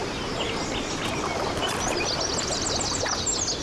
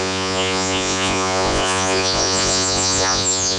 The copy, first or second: second